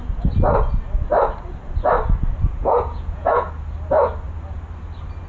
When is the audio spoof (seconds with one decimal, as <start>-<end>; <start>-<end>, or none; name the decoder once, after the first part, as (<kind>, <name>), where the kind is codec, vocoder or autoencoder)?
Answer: 2.6-3.5 (vocoder, Vocos)